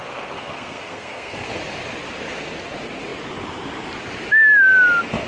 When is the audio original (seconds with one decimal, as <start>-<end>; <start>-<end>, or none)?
1.6-5.3